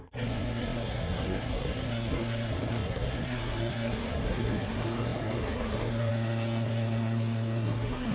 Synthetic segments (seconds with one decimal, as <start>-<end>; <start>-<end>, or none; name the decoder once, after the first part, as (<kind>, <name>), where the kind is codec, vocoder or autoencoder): 0.0-8.1 (codec, SNAC)